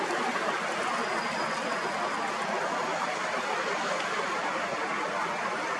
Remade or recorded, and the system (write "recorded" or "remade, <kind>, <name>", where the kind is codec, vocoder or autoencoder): recorded